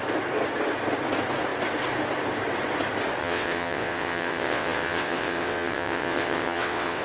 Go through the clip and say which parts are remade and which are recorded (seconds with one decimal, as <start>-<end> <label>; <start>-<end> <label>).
0.0-3.2 recorded; 3.2-7.0 remade